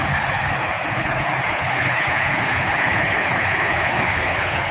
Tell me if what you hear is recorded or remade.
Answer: remade